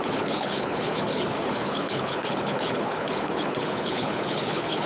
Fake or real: fake